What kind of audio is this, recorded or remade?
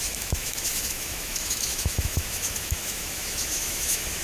remade